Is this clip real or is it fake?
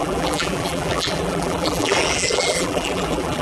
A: fake